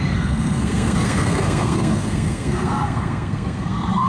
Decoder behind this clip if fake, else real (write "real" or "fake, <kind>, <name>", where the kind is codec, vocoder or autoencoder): fake, codec, SNAC